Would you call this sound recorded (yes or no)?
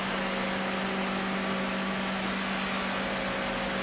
yes